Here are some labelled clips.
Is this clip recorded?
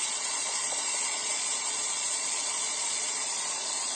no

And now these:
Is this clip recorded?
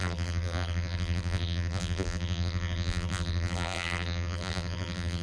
no